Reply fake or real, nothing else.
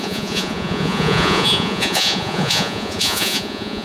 fake